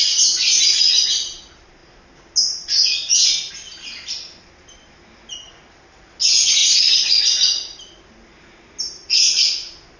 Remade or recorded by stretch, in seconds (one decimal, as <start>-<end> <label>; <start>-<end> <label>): 0.0-10.0 recorded